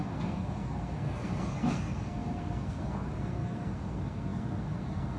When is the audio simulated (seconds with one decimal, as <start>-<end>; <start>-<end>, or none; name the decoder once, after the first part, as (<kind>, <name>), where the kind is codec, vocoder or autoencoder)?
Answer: 0.0-5.2 (codec, SNAC)